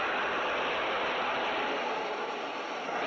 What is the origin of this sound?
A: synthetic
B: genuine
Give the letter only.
B